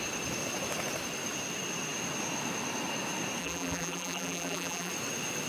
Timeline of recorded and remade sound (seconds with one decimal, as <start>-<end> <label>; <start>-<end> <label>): 0.0-3.4 recorded; 3.4-4.9 remade; 4.9-5.5 recorded